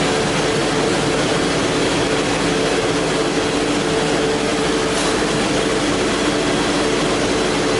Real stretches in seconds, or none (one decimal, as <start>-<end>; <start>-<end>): 0.0-4.5; 6.5-7.8